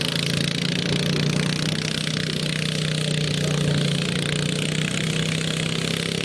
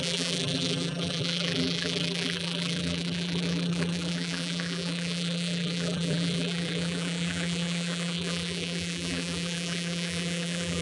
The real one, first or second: first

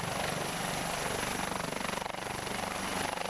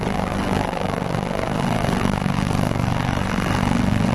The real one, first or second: first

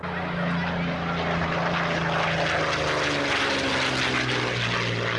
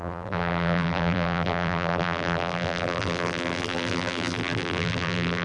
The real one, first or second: first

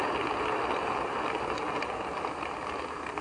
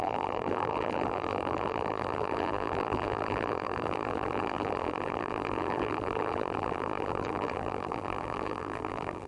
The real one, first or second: first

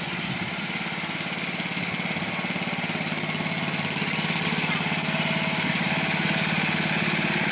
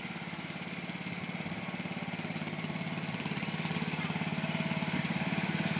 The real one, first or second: first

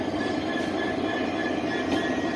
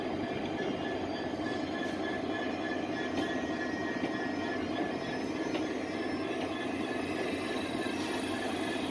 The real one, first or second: second